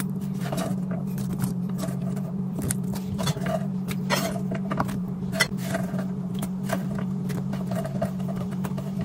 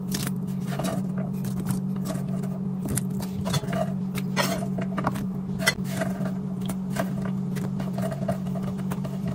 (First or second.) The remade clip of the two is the first